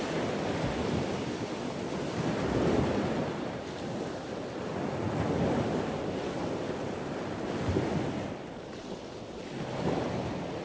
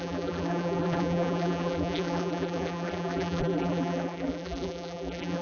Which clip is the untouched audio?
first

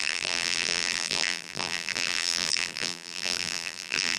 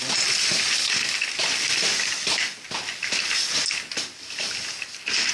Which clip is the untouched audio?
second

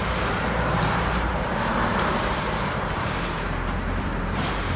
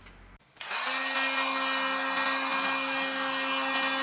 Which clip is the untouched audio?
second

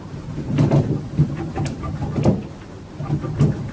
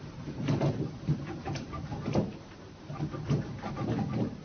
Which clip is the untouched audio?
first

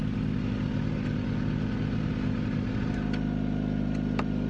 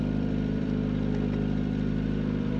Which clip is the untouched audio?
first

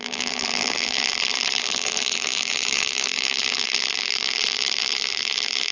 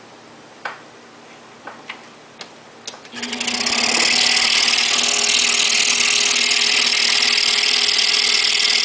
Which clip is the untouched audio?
second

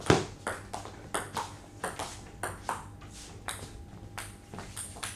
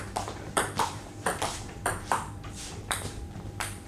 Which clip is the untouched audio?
first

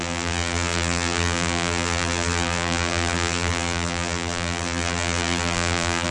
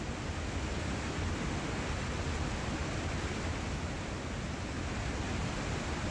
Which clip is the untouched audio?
second